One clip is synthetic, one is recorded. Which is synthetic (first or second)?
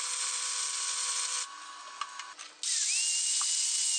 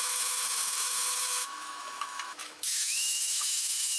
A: second